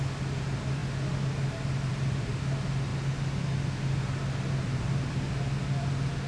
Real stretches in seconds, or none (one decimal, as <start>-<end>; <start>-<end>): 0.0-6.3